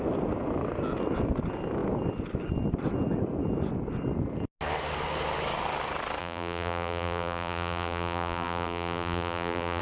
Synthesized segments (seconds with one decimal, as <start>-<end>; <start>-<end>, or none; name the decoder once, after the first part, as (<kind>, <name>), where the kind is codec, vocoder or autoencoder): 6.2-9.8 (vocoder, BigVGAN v2)